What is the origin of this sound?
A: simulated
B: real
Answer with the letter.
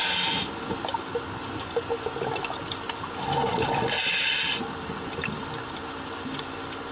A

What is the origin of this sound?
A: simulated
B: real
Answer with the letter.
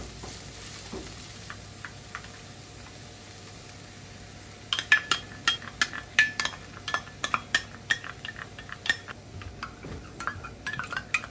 B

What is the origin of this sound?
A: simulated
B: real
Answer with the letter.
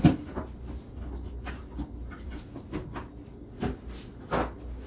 B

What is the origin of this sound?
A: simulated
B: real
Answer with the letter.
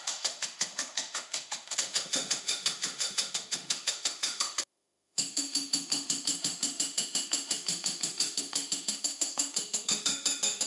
A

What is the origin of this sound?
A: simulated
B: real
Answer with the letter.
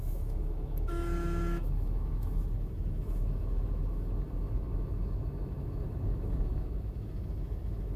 A